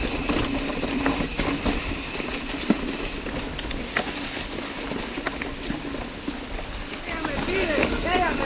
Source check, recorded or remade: recorded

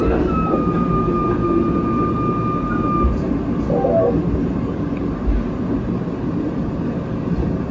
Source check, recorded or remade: recorded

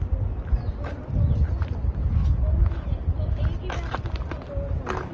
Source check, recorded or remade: recorded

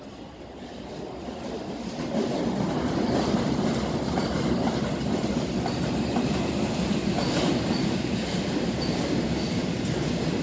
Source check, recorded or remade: recorded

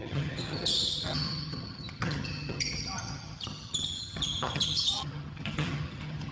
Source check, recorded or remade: remade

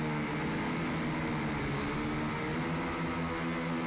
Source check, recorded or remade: recorded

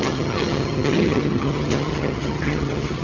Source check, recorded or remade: remade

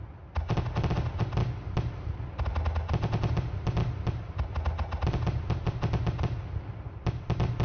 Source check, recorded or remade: recorded